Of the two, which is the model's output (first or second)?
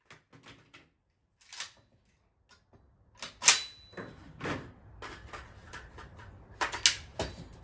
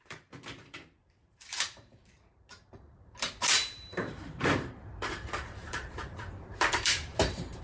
second